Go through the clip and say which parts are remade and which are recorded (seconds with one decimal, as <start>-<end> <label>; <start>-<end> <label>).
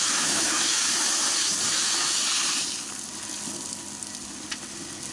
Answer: 0.0-0.8 remade; 0.8-1.7 recorded; 1.7-2.2 remade; 2.2-5.1 recorded